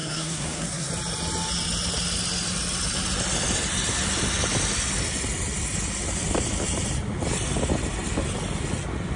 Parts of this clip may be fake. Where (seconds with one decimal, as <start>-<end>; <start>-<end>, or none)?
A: 0.0-0.9